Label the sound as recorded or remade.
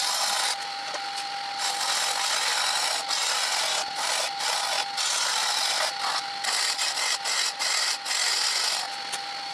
recorded